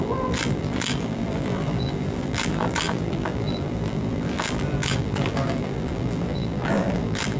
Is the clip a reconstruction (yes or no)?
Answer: yes